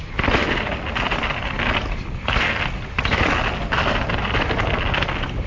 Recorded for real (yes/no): yes